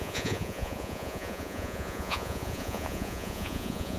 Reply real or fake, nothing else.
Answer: fake